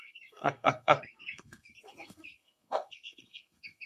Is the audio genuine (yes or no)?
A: no